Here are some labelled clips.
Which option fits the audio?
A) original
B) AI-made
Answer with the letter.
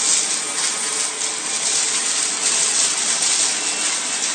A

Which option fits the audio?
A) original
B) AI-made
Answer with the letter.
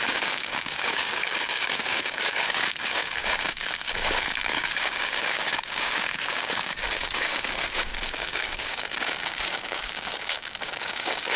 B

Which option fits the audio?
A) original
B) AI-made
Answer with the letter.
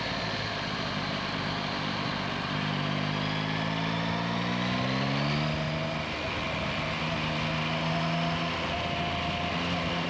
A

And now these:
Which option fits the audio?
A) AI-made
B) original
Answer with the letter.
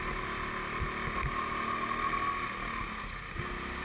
B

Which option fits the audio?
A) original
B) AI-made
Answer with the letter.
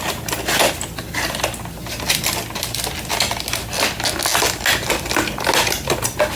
A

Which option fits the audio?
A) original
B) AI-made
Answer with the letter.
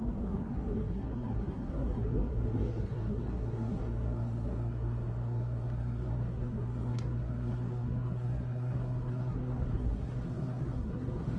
B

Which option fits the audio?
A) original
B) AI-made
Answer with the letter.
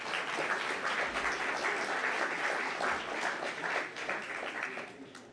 A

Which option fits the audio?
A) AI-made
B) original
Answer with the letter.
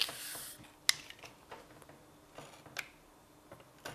B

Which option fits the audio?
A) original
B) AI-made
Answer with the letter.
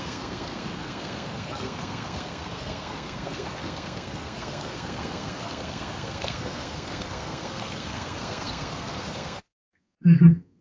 B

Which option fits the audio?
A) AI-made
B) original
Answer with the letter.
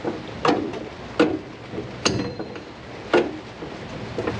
B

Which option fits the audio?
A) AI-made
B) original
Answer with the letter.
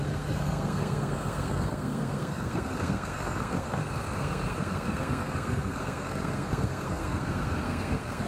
A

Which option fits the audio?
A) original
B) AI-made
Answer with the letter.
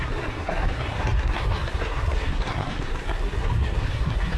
B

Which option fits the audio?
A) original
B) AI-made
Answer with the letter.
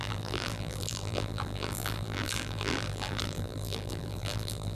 B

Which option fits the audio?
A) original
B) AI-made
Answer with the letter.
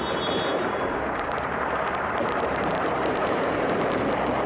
B